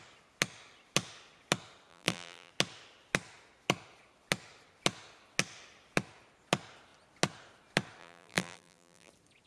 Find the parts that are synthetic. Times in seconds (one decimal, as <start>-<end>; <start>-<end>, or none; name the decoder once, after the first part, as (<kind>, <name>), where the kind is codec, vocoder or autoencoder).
1.9-2.5 (vocoder, BigVGAN v2); 8.0-9.1